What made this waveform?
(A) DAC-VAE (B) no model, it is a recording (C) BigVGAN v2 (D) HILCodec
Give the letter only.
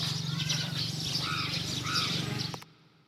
C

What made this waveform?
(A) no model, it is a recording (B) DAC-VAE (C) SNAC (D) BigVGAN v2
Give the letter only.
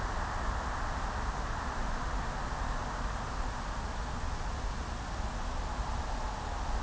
A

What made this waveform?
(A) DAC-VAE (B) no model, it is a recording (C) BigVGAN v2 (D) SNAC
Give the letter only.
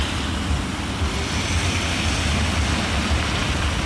B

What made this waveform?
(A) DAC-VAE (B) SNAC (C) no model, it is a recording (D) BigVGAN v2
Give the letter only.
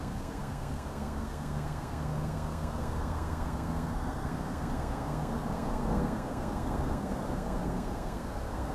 B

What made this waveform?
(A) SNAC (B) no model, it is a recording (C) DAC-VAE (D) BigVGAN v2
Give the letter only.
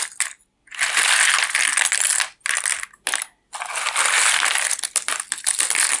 B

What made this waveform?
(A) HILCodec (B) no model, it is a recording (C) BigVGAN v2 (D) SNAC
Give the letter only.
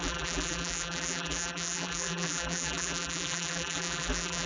C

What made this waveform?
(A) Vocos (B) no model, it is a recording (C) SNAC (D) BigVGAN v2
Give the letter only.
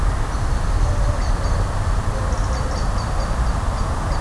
B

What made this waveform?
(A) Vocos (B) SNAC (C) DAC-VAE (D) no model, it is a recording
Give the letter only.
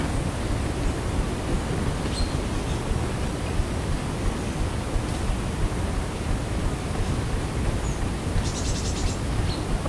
D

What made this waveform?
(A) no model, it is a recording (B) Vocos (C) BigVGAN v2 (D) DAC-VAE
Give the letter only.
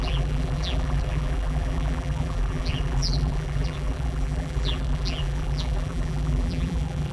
C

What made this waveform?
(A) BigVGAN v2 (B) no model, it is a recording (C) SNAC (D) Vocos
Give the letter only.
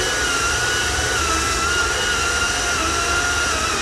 B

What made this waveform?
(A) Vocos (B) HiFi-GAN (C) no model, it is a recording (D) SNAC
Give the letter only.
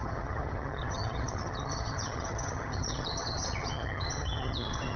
B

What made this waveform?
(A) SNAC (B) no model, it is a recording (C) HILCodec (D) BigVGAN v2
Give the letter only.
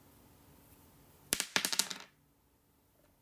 B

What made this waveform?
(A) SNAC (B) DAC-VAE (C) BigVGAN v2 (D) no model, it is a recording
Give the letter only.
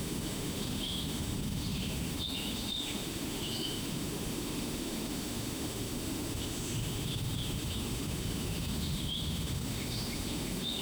B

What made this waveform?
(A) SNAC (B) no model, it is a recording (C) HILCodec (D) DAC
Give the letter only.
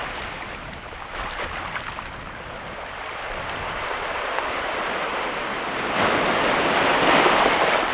B